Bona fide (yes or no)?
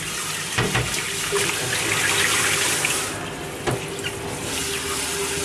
yes